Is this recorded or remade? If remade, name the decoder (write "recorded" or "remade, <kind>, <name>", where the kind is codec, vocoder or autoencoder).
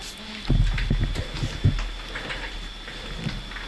recorded